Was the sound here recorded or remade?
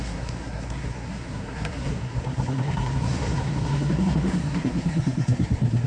remade